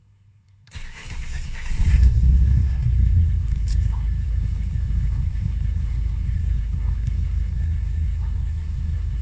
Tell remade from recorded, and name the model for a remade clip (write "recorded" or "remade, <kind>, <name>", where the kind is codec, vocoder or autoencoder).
remade, codec, SNAC